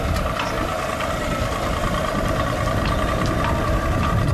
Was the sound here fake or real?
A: real